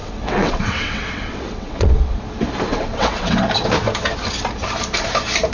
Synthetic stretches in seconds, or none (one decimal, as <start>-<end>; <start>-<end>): 0.0-2.2; 2.7-3.4